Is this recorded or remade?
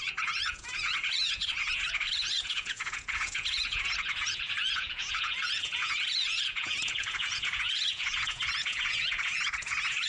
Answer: remade